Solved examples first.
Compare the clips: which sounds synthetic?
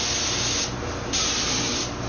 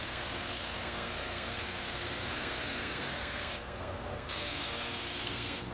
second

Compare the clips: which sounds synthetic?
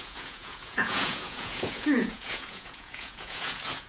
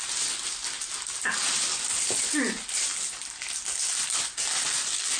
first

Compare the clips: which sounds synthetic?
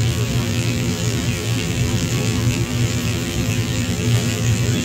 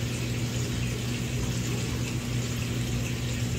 first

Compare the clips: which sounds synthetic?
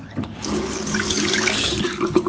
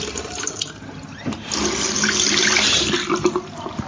first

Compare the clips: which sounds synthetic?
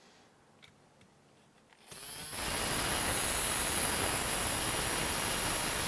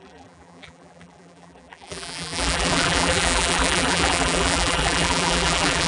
second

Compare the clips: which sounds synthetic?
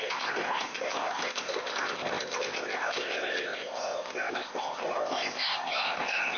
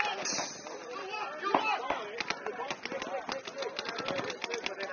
first